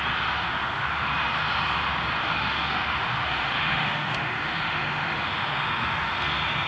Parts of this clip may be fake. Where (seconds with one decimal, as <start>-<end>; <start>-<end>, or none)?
0.4-1.1; 2.2-6.2